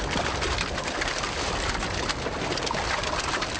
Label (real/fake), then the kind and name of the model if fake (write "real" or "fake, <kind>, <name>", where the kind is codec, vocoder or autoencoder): real